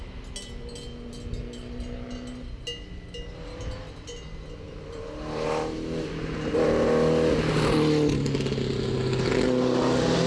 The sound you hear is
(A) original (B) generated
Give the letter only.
A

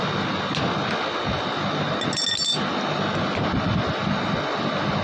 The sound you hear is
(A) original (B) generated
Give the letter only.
A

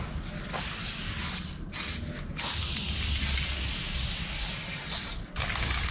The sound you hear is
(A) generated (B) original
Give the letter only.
B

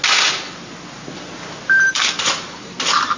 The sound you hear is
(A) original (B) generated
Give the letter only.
A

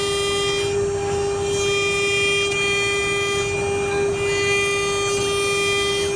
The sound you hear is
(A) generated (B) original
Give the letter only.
B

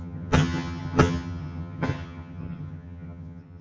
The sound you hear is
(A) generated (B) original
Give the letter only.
A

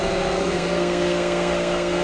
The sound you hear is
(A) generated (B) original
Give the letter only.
A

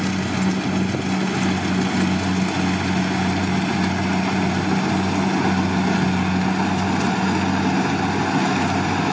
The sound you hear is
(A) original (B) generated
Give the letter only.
A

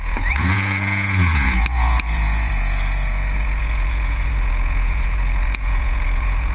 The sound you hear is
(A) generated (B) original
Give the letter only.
A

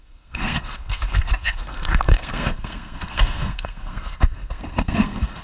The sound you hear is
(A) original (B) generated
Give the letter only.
B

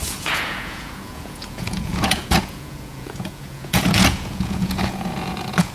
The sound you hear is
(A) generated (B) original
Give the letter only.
A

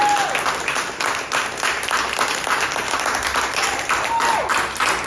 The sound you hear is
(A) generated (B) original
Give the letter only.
B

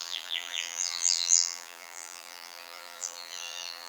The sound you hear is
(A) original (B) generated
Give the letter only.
B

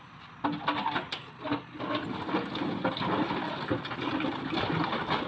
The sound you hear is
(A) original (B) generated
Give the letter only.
A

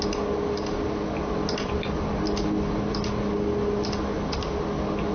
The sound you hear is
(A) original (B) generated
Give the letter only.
A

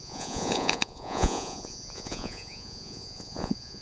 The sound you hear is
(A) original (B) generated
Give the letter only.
B